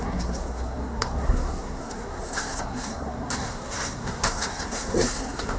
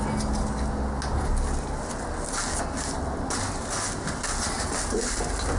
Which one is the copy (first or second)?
first